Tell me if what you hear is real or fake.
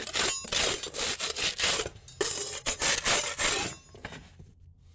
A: real